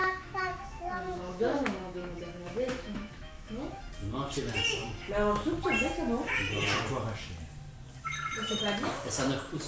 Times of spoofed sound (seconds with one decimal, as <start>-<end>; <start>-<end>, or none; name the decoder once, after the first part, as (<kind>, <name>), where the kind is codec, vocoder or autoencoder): 0.0-3.8 (autoencoder, DAC-VAE)